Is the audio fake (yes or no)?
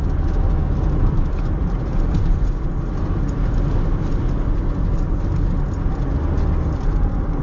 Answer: no